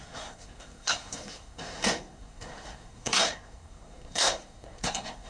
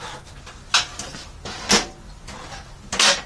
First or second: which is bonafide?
second